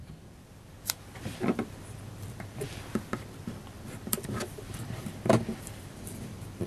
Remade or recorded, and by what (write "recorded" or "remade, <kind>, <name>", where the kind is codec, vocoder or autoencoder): remade, vocoder, BigVGAN v2